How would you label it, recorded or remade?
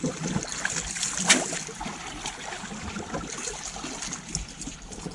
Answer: recorded